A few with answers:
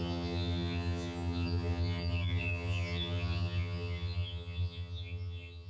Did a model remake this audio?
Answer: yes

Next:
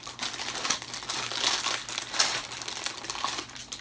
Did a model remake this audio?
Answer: no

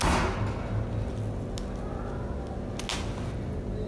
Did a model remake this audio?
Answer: no